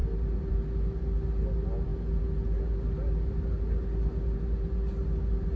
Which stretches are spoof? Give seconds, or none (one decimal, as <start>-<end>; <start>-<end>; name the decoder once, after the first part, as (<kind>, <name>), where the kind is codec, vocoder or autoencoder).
none